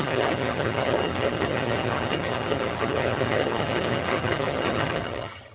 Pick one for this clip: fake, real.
fake